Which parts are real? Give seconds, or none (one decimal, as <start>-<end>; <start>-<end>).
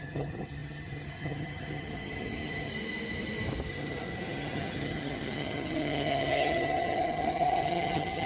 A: 2.7-3.7